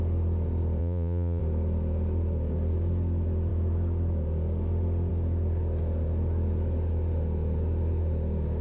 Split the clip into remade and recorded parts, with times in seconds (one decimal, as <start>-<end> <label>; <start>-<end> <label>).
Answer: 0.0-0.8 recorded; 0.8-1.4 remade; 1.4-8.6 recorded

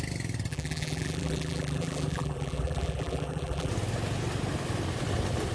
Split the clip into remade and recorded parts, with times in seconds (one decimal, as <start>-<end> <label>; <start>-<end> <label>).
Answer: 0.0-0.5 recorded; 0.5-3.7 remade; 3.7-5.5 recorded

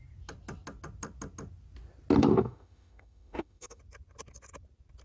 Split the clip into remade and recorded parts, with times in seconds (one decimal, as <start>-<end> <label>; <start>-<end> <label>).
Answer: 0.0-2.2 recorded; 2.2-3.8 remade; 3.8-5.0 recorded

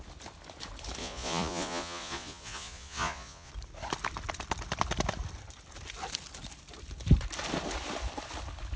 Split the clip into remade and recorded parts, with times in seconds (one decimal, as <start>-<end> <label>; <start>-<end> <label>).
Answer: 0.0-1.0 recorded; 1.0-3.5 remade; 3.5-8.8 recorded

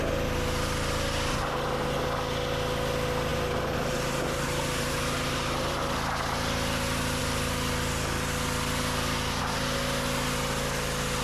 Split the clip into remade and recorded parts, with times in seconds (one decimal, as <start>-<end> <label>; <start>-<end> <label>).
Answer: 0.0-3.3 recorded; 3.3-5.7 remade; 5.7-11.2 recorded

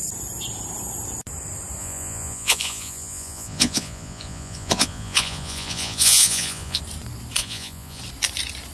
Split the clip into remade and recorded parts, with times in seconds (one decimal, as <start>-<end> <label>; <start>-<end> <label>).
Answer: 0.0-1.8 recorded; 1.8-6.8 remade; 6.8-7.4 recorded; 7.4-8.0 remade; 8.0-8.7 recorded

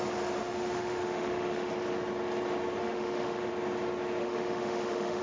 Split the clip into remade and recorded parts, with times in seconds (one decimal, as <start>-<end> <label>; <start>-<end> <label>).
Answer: 0.0-0.4 recorded; 0.4-1.7 remade; 1.7-2.8 recorded; 2.8-3.5 remade; 3.5-4.2 recorded; 4.2-5.2 remade

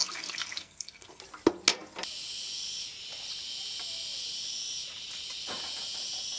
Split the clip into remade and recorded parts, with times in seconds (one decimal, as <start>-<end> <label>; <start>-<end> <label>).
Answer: 0.0-1.2 remade; 1.2-6.4 recorded